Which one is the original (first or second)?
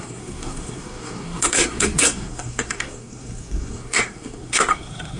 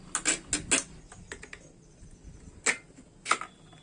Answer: second